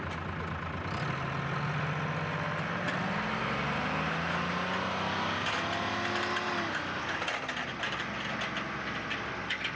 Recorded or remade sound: recorded